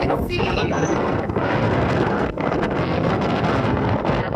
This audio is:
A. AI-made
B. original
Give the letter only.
A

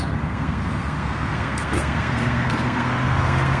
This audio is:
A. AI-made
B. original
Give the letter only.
A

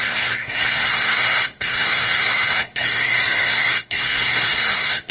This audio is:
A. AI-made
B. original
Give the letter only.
A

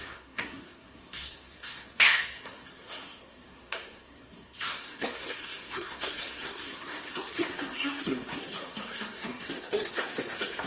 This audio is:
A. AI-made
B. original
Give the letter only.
A